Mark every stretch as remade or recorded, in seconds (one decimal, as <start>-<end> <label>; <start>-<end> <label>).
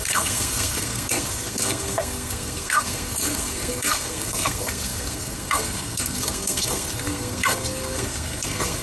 0.0-8.8 remade